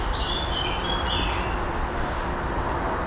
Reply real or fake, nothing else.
real